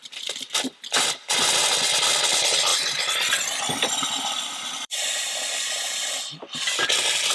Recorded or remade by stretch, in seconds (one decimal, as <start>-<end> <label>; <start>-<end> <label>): 0.0-2.7 recorded; 2.7-7.3 remade